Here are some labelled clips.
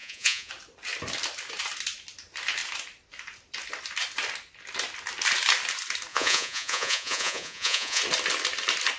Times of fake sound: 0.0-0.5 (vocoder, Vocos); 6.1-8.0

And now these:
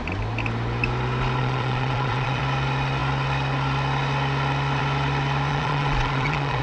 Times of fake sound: 1.4-2.4 (vocoder, Vocos); 5.5-6.6

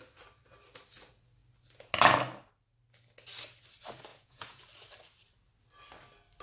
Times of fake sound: 4.1-4.6 (vocoder, Vocos)